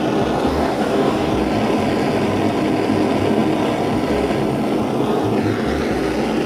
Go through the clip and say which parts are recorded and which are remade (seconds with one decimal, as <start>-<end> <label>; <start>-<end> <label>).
0.0-0.5 recorded; 0.5-1.3 remade; 1.3-6.5 recorded